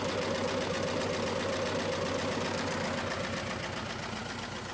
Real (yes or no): yes